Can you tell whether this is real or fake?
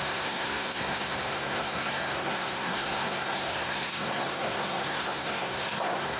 fake